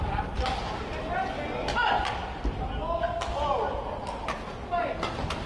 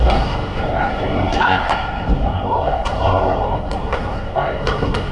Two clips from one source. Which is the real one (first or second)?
first